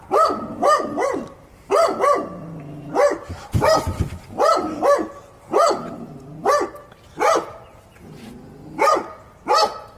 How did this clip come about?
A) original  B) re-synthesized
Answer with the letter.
A